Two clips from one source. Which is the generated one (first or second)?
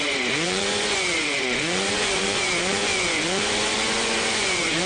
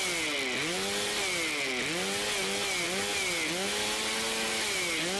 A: first